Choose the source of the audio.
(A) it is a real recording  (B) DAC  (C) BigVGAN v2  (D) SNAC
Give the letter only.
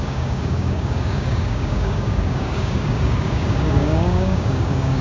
B